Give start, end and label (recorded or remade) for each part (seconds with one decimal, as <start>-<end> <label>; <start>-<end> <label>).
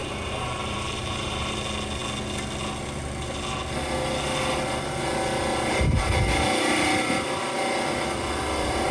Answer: 0.0-1.6 remade; 1.6-8.9 recorded